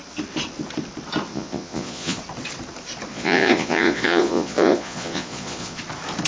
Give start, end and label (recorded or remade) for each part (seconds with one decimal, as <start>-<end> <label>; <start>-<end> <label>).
0.0-1.3 recorded; 1.3-2.2 remade; 2.2-3.1 recorded; 3.1-5.8 remade; 5.8-6.3 recorded